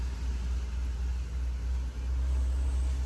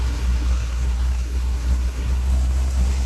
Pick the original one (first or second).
first